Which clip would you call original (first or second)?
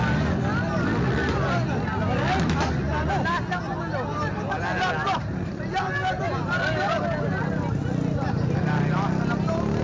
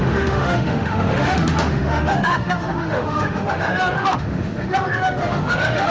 first